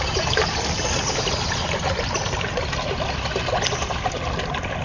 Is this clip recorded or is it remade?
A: recorded